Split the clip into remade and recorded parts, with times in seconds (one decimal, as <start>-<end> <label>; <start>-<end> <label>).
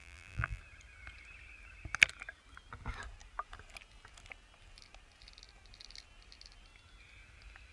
0.0-0.6 remade; 0.6-7.7 recorded